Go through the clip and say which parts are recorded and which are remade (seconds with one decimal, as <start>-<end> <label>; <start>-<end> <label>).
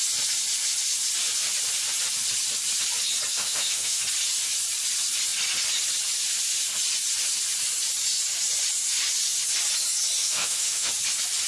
0.0-3.3 recorded; 3.3-4.0 remade; 4.0-10.2 recorded; 10.2-10.9 remade; 10.9-11.5 recorded